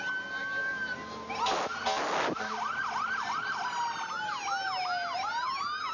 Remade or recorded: recorded